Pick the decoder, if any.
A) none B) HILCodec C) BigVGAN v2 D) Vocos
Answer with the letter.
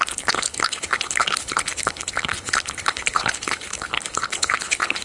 B